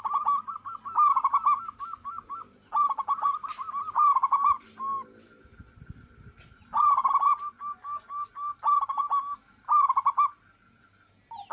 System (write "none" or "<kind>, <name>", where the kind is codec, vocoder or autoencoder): none